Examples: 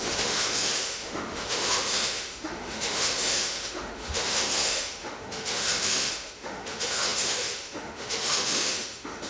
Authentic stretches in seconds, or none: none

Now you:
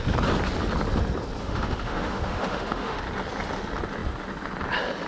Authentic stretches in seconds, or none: 0.0-1.4; 3.0-5.1

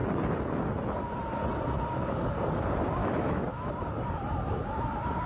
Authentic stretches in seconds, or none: 0.0-3.0; 3.7-5.3

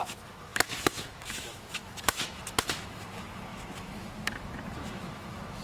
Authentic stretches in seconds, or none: none